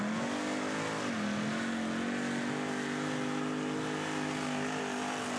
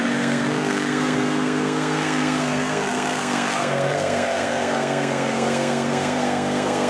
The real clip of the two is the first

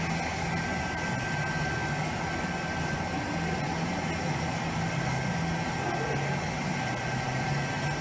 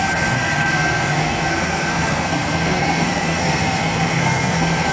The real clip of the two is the first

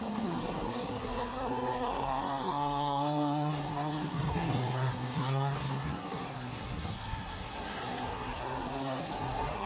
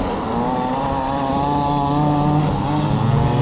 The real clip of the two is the second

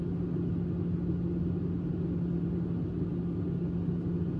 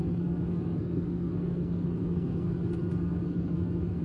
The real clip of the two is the first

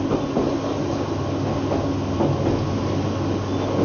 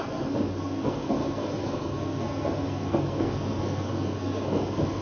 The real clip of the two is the first